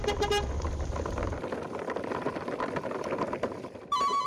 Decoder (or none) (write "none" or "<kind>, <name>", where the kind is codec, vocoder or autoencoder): none